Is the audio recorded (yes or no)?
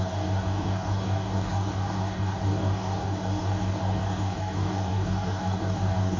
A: no